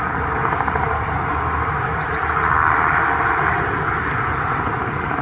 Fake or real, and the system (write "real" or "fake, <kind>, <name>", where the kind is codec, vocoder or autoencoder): real